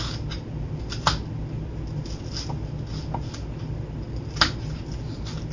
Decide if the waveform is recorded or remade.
recorded